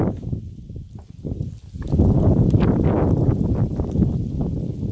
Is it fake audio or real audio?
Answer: real